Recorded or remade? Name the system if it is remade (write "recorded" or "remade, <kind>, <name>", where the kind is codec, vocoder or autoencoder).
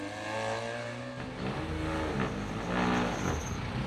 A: recorded